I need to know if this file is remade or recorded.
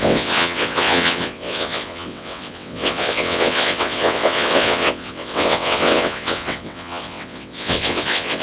remade